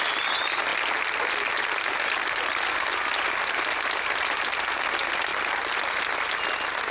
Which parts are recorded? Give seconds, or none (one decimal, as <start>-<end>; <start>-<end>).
0.0-6.9